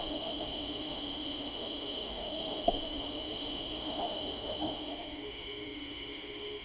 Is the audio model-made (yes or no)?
yes